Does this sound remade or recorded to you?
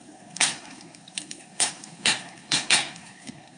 remade